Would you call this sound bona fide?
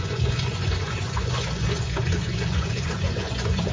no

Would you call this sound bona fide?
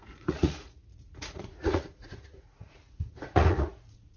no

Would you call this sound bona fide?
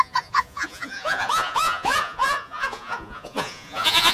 no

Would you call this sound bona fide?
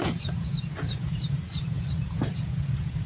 no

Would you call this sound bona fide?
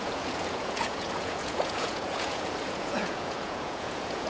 no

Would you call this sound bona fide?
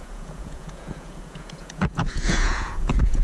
no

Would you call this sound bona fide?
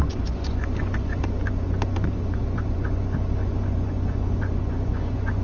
no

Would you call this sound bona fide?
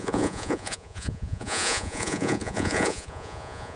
no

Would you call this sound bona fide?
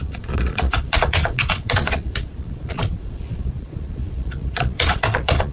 no